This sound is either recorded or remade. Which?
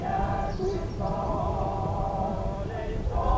remade